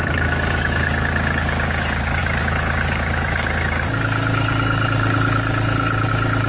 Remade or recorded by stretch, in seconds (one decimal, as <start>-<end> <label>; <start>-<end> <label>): 0.0-6.5 remade